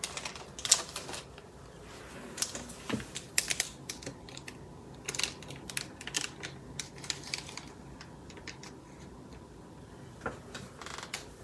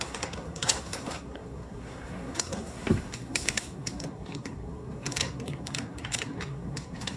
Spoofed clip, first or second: second